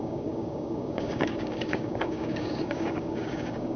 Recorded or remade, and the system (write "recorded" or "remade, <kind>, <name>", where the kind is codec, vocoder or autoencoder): remade, codec, DAC